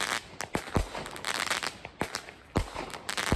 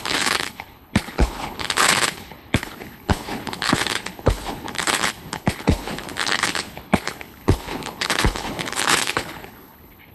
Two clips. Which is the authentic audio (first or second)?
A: first